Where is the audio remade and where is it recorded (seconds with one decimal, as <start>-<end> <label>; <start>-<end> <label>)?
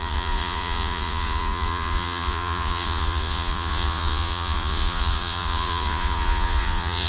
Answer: 0.0-7.1 remade